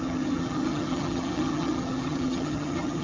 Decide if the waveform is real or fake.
fake